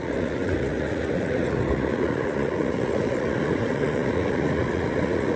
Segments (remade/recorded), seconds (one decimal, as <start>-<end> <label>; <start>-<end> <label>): 0.0-5.4 remade